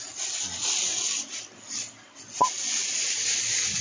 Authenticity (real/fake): real